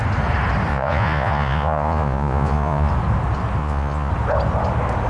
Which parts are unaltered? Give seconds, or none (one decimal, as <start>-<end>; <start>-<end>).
0.0-0.7; 2.9-3.6; 4.1-5.1